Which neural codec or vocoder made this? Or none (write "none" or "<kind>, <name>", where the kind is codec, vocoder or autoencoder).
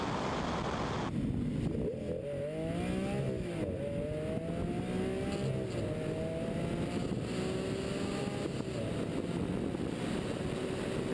none